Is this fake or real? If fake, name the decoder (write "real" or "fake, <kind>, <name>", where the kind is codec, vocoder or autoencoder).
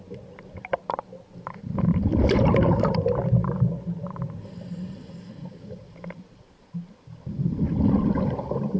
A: real